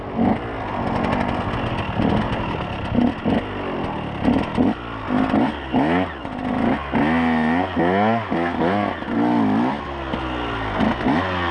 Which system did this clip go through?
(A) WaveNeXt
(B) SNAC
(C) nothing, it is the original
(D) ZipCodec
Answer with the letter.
C